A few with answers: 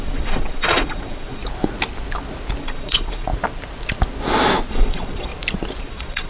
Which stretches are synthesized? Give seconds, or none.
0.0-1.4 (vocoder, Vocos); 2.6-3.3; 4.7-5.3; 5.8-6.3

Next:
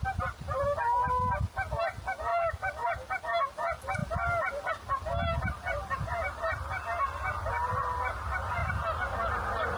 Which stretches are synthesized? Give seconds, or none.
2.3-2.9 (autoencoder, DAC-VAE)